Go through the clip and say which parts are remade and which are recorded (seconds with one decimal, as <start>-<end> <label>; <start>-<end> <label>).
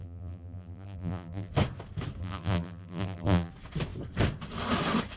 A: 0.0-1.5 remade; 1.5-2.2 recorded; 2.2-3.5 remade; 3.5-5.2 recorded